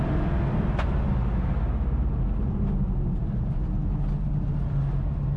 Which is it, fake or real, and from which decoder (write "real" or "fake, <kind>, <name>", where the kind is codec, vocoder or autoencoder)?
real